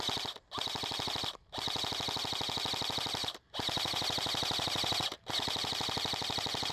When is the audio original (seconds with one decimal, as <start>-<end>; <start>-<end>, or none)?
0.0-3.2